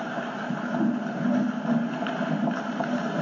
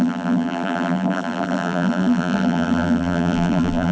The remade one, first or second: second